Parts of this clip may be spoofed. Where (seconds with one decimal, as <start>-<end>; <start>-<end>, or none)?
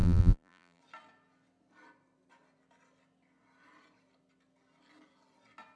0.0-0.8